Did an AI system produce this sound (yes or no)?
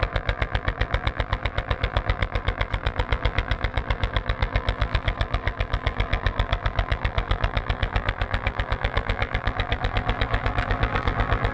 yes